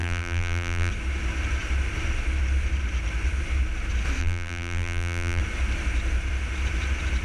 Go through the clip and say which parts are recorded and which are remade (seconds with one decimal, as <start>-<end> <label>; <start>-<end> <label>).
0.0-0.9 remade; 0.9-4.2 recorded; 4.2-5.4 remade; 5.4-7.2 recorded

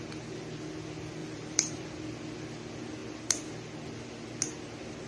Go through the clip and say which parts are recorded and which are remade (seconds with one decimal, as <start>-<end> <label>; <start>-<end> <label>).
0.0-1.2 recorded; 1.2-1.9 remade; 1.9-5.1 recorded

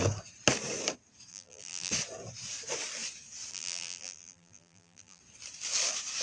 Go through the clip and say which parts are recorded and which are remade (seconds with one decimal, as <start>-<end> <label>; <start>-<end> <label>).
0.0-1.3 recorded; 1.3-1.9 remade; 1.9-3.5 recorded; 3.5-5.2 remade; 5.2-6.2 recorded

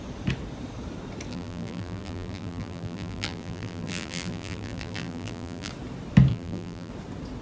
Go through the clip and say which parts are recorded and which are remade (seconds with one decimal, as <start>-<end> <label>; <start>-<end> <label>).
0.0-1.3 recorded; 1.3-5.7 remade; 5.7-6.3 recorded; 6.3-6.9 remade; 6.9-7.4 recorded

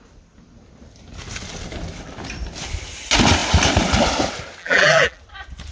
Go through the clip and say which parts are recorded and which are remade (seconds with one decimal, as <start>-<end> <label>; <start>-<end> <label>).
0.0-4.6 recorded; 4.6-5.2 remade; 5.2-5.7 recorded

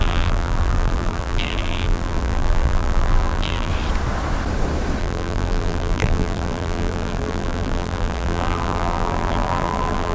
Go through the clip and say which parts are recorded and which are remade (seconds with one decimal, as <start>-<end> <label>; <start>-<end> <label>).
0.0-3.7 remade; 3.7-5.0 recorded; 5.0-10.1 remade